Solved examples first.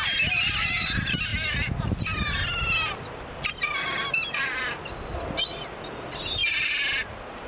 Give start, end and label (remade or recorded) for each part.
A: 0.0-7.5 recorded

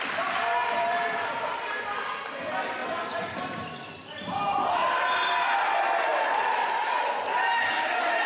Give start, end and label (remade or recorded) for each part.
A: 0.0-0.6 recorded; 0.6-2.2 remade; 2.2-8.3 recorded

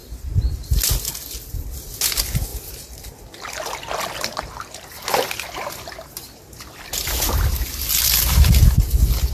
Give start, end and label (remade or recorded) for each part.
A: 0.0-9.3 recorded

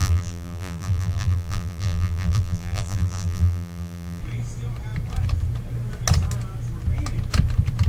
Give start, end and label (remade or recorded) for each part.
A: 0.0-4.2 remade; 4.2-7.9 recorded